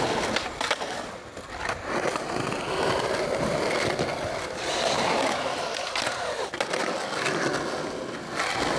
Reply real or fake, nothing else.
real